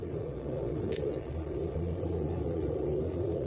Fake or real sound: fake